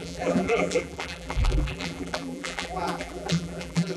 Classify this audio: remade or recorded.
remade